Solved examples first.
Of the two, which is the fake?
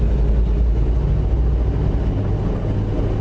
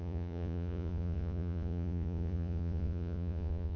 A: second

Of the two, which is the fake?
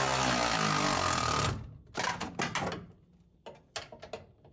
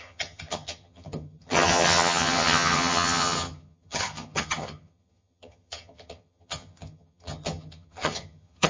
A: second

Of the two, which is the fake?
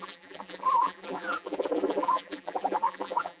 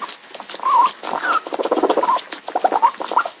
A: first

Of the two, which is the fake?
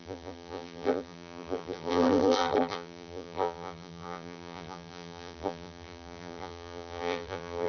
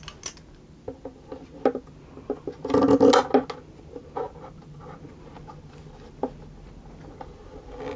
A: first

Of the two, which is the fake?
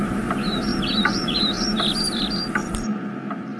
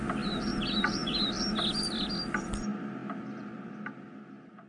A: first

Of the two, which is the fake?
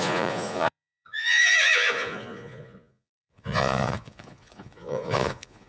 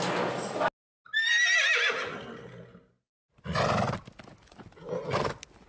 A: first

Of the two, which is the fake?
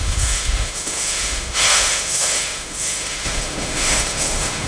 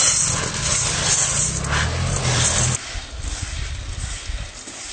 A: first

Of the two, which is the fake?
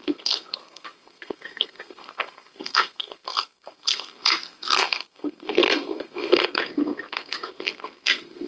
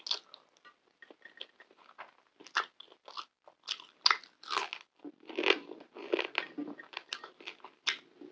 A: first